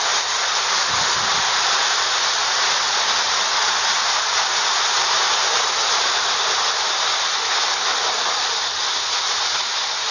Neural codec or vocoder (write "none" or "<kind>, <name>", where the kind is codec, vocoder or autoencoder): none